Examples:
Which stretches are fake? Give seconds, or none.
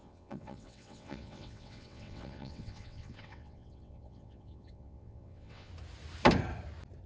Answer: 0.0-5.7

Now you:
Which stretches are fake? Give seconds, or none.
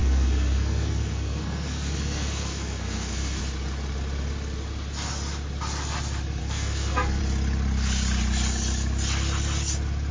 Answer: 0.0-3.4; 6.4-7.2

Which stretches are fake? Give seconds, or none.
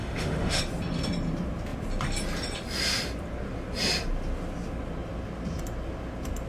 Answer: 0.0-0.6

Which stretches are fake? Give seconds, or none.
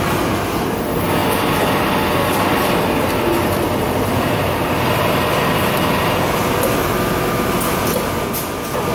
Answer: none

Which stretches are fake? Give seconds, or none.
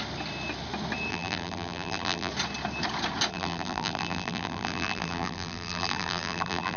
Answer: 1.1-2.3; 3.3-6.8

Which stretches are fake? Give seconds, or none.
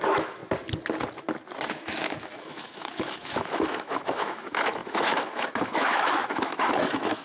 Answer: 0.0-0.4; 1.7-7.2